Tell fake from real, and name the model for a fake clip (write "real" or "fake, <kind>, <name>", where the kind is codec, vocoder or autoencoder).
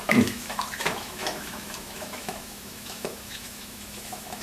fake, autoencoder, DAC-VAE